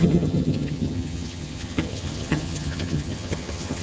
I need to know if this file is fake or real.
fake